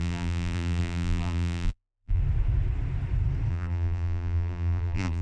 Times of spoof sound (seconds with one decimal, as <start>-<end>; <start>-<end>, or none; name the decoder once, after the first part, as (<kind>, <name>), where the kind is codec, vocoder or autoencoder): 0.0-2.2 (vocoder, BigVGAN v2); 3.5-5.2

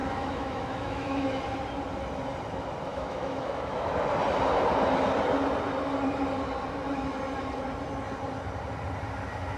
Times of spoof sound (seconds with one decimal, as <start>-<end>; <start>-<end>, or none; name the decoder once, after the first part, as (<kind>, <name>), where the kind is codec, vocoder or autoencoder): 0.0-1.4 (autoencoder, DAC-VAE); 2.9-3.9

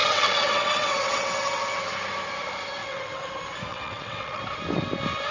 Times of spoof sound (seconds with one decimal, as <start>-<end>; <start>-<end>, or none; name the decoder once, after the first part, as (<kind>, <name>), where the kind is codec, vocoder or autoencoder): 0.0-1.9 (vocoder, WaveNeXt); 2.8-3.3; 3.7-4.4

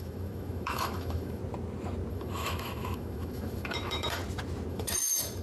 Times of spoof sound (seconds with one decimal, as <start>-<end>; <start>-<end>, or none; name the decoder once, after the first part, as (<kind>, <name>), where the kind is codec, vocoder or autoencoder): 0.0-1.4 (autoencoder, DAC-VAE); 2.1-4.2; 4.7-5.4

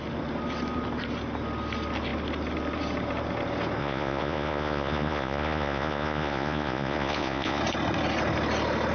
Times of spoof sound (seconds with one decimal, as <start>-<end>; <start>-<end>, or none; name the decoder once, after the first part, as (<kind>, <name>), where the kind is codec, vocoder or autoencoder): 3.8-7.6 (vocoder, Vocos)

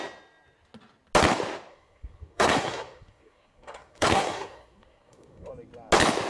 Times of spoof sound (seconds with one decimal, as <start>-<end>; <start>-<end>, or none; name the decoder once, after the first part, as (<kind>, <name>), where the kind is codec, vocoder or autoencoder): 1.7-5.5 (codec, SNAC)